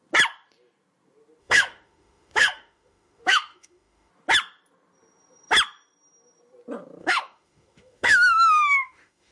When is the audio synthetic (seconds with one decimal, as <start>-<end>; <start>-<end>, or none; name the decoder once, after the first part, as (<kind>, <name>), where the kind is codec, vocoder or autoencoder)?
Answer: 1.4-4.1 (autoencoder, DAC-VAE); 7.0-9.3